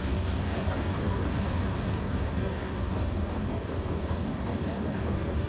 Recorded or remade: remade